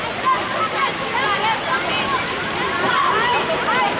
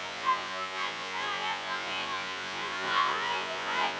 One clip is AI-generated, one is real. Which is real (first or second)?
first